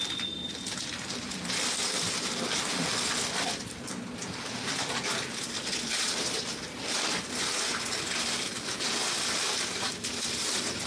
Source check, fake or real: fake